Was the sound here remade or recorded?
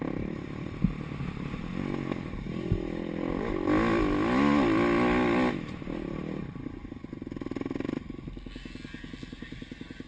recorded